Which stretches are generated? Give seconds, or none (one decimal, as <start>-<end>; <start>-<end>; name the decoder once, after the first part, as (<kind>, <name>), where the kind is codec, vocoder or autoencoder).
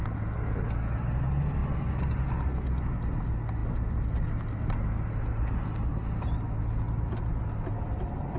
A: none